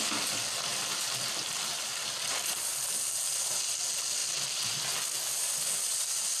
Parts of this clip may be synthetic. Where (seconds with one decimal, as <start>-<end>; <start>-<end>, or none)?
0.7-2.7